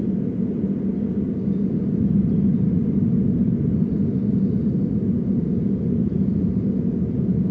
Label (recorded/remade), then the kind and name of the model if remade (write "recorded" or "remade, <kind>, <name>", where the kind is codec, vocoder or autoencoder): recorded